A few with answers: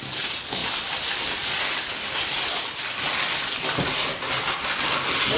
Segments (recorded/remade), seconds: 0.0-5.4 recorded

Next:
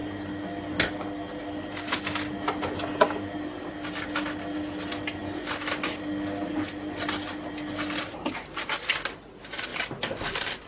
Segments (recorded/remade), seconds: 0.0-10.7 recorded

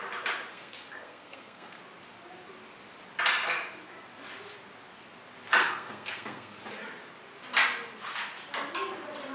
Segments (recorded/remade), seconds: 0.0-0.5 recorded; 0.5-1.8 remade; 1.8-5.6 recorded; 5.6-6.6 remade; 6.6-9.3 recorded

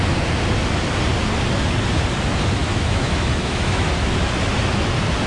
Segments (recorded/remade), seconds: 0.0-2.6 recorded; 2.6-3.9 remade; 3.9-5.3 recorded